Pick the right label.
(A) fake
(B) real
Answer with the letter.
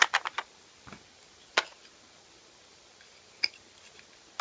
B